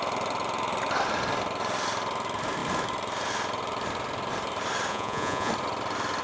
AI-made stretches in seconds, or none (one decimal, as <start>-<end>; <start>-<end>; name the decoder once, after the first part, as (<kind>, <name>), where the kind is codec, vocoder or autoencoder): 4.9-5.5 (vocoder, Vocos)